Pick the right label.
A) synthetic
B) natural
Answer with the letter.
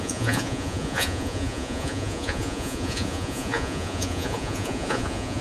A